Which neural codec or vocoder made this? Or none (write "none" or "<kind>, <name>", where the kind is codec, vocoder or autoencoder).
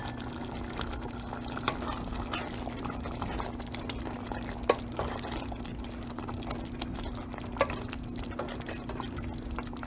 none